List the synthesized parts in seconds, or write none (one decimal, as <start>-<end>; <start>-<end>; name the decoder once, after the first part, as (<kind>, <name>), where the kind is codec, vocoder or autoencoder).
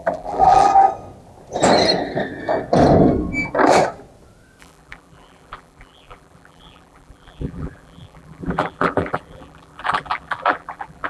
0.0-0.7 (vocoder, BigVGAN v2); 4.6-11.1